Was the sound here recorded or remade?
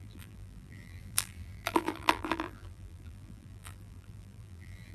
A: remade